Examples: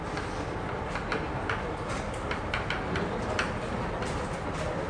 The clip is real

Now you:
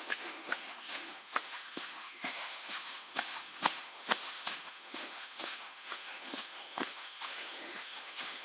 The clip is fake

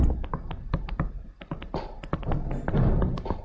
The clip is real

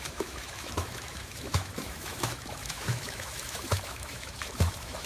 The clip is fake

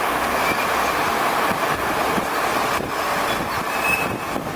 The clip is real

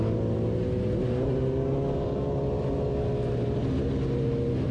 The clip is real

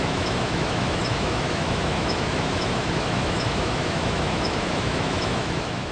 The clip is fake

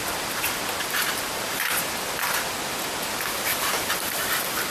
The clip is real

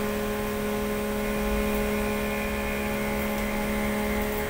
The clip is real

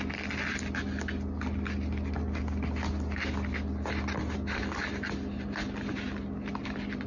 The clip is real